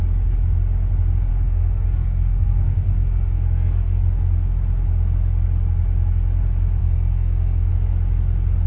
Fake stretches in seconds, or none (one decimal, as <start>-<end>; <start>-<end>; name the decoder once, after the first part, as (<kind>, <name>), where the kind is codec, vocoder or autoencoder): 1.3-4.0 (codec, SNAC); 6.8-7.7